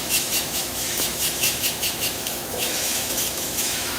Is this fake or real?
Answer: fake